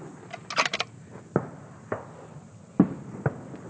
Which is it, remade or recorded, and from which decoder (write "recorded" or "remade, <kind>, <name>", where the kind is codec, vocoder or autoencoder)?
recorded